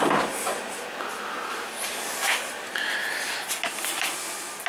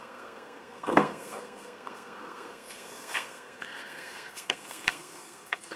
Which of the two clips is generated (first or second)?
second